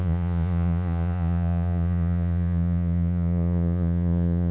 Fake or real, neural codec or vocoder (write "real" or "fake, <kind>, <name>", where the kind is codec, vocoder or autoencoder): fake, vocoder, Vocos